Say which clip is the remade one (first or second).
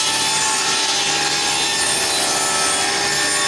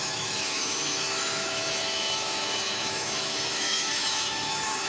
second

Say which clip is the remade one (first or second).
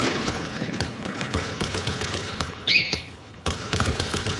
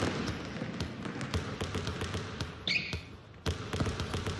first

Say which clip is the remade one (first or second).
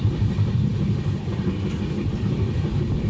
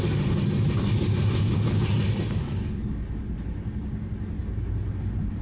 first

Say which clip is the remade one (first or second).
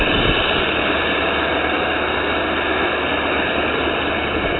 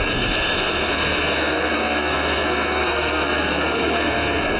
second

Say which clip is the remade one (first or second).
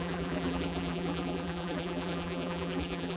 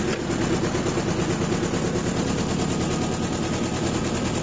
first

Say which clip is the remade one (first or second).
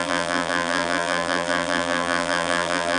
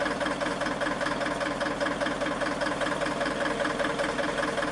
first